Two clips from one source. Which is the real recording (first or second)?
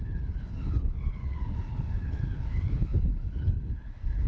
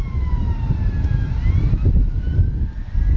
second